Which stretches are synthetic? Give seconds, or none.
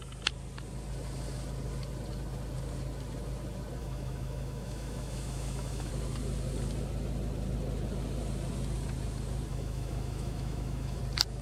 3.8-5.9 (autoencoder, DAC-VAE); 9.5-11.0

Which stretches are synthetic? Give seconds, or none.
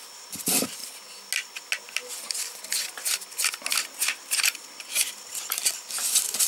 none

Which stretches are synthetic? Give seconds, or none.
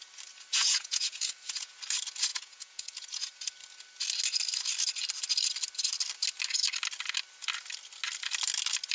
0.5-1.8 (vocoder, Vocos); 2.3-3.4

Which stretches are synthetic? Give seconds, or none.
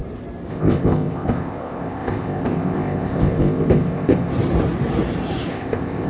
0.5-4.3 (codec, ZipCodec); 5.5-6.1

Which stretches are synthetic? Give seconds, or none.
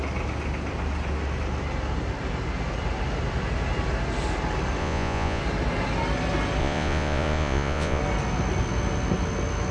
4.8-5.4 (vocoder, Vocos); 6.6-8.0